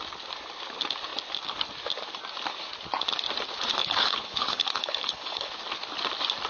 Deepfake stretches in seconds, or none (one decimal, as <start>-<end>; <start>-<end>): 3.8-5.5